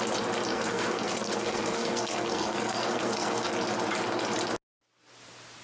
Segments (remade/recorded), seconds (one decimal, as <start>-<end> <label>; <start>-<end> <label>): 0.0-0.5 recorded; 0.5-3.5 remade; 3.5-5.6 recorded